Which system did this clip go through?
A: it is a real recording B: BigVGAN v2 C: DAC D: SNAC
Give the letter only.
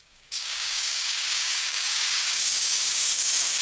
C